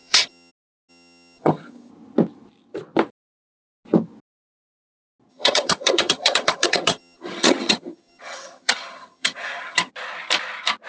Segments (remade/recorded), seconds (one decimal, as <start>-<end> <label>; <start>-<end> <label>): 0.0-0.5 remade; 0.5-0.9 recorded; 0.9-1.9 remade; 1.9-5.3 recorded; 5.3-9.9 remade; 9.9-10.9 recorded